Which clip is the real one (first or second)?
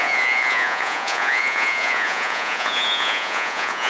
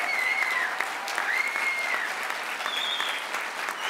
second